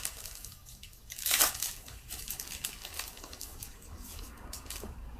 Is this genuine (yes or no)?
no